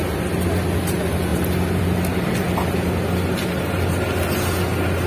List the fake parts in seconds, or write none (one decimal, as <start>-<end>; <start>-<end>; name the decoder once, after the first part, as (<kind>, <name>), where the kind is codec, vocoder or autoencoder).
none